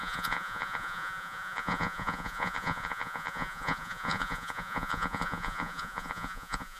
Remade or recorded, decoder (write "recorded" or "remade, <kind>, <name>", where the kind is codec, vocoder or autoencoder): remade, vocoder, Vocos